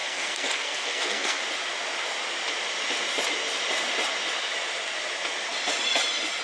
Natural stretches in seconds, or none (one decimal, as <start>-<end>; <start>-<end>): 1.4-6.4